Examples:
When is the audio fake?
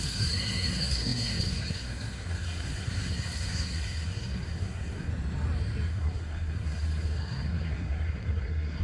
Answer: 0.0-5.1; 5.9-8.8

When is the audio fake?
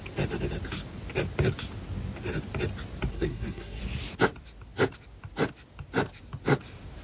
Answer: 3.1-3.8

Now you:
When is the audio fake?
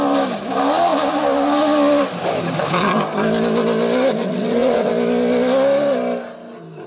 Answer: 4.2-4.9